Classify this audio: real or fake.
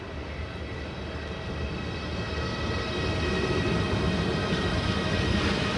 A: real